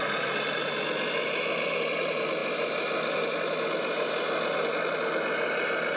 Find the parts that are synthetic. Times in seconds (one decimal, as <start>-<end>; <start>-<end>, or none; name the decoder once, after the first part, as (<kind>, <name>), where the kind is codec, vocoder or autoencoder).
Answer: none